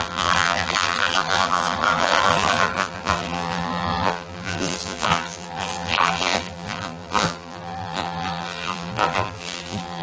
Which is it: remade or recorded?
remade